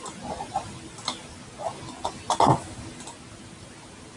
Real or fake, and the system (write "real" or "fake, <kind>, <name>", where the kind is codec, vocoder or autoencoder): real